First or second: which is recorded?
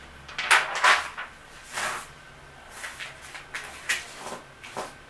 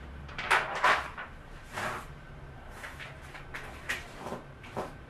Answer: first